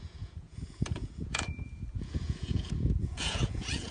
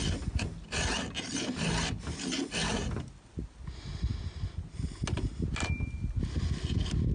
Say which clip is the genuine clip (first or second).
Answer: second